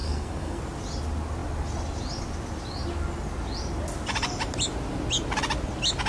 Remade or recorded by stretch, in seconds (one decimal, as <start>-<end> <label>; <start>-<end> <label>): 0.0-0.6 remade; 0.6-6.1 recorded